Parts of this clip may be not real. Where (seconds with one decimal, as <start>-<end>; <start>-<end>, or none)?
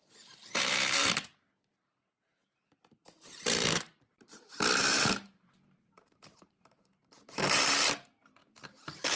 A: 0.0-3.9; 4.8-9.2